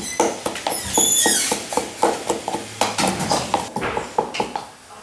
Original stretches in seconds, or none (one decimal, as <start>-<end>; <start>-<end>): 0.0-5.0